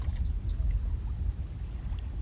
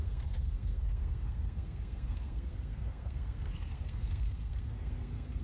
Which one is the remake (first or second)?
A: second